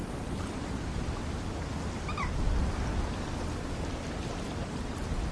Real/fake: real